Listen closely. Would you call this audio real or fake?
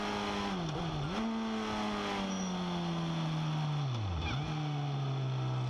real